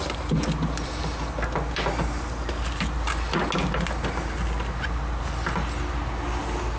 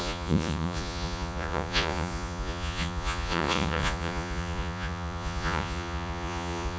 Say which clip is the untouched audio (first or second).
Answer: first